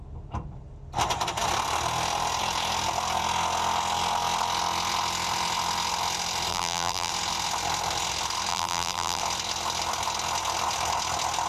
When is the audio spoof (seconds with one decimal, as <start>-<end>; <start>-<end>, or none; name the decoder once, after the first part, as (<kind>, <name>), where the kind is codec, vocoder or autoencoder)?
6.5-7.1 (vocoder, BigVGAN v2); 8.5-9.2